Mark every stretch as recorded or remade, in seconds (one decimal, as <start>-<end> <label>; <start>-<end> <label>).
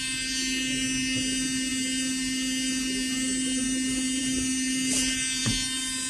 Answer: 0.0-6.1 recorded